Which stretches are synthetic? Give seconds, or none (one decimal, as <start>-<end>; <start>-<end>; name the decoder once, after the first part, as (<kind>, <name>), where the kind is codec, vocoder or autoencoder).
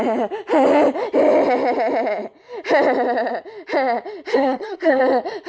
4.3-5.0 (codec, SNAC)